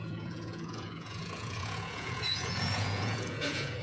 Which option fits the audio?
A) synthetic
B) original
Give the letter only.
A